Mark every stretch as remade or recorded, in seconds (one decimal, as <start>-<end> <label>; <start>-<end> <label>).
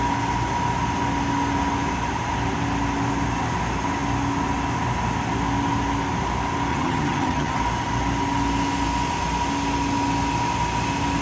0.0-6.7 recorded; 6.7-7.6 remade; 7.6-11.2 recorded